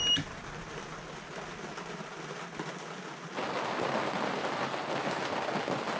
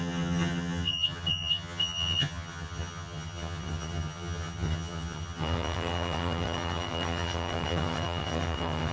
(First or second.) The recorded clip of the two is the first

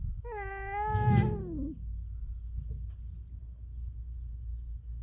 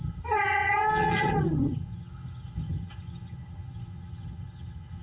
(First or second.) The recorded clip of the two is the first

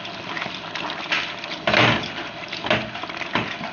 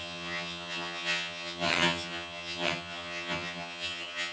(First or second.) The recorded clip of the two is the first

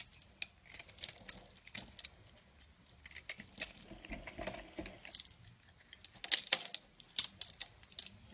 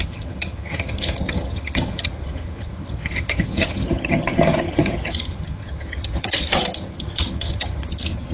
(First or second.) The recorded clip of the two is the first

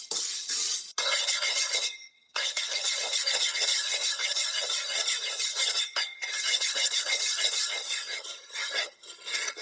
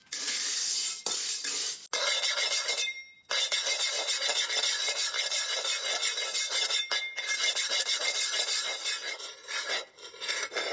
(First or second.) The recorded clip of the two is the second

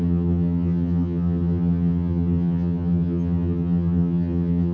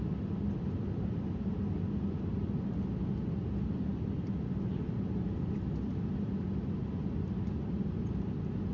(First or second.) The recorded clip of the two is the second